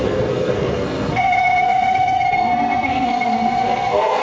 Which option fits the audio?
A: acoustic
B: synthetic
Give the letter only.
B